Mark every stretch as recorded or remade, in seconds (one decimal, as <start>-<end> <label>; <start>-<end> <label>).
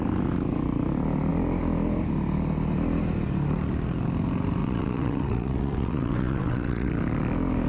0.0-4.6 recorded; 4.6-6.9 remade; 6.9-7.7 recorded